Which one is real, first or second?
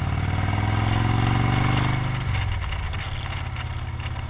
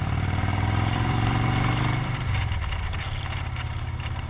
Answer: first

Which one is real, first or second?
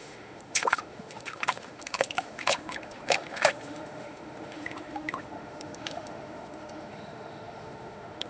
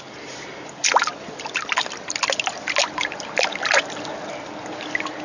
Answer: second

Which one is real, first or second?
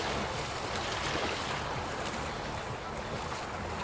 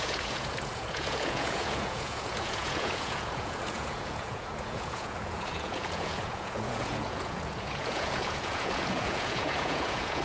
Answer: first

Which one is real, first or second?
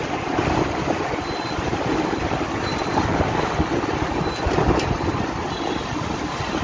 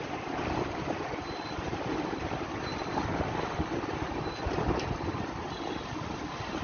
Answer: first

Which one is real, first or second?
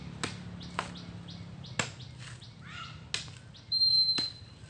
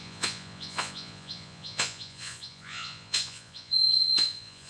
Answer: first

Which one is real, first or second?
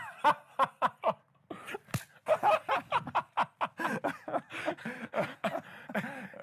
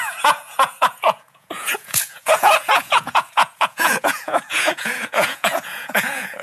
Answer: first